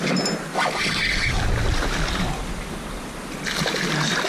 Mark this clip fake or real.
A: real